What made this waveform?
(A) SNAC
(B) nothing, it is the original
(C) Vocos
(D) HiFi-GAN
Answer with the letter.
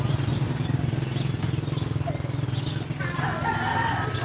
B